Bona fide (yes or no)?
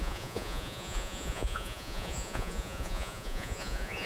no